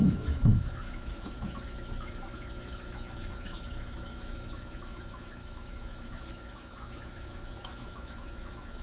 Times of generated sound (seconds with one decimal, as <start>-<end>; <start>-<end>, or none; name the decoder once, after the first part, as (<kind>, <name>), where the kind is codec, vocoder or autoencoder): 0.0-8.8 (autoencoder, DAC-VAE)